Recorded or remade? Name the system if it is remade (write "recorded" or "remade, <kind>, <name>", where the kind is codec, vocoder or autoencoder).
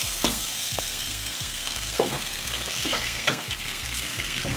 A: remade, codec, SNAC